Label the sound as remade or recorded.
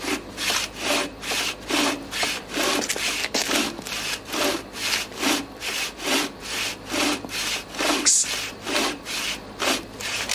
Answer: recorded